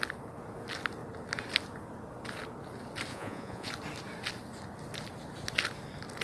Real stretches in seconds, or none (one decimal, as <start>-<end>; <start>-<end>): 0.0-3.1; 3.7-6.2